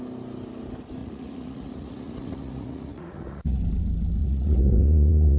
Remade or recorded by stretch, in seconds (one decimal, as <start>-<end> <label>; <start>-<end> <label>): 0.0-1.0 recorded; 1.0-3.6 remade; 3.6-4.2 recorded; 4.2-5.4 remade